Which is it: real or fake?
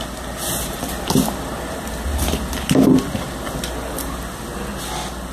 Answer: real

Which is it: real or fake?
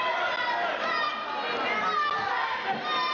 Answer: real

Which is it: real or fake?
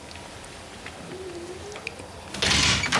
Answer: real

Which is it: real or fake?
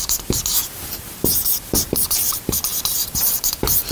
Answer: fake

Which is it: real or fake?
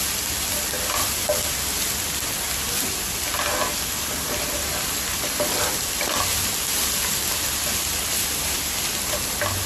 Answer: real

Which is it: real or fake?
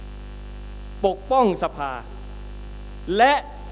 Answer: real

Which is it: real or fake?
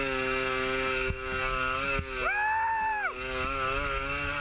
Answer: real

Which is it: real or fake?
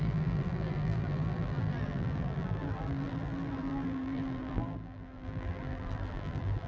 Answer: fake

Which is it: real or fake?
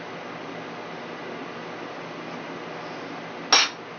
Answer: real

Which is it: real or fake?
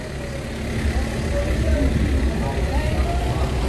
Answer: real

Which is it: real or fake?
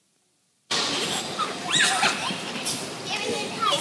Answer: fake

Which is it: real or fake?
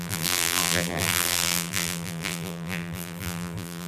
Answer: fake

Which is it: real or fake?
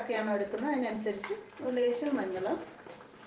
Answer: fake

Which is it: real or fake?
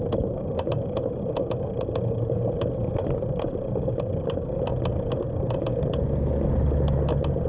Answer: real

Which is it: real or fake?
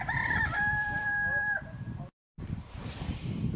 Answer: fake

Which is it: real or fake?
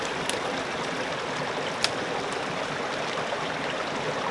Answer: real